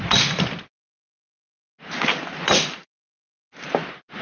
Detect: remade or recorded recorded